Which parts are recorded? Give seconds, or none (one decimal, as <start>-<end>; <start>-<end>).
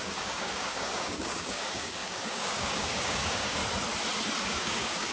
3.6-4.4